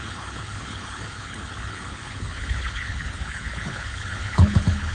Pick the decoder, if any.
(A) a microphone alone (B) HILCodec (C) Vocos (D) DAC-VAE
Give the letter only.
B